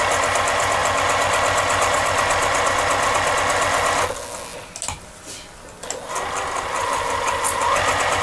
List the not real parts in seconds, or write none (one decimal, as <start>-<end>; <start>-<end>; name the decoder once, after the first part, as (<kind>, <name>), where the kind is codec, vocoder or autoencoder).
none